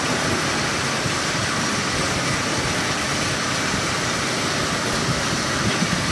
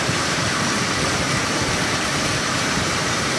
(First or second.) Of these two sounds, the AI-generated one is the second